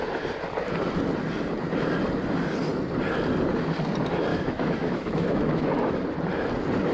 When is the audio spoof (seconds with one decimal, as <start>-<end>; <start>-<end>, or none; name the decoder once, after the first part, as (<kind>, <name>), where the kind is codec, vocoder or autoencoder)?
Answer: 4.3-5.7 (autoencoder, DAC-VAE)